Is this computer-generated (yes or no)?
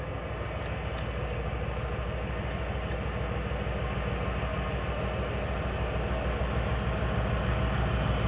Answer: no